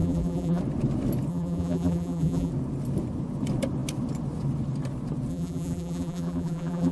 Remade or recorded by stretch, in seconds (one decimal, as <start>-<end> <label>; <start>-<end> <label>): 0.0-0.6 remade; 0.6-1.3 recorded; 1.3-2.5 remade; 2.5-5.3 recorded; 5.3-6.9 remade